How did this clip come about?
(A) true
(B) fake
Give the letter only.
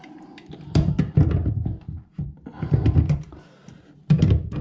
B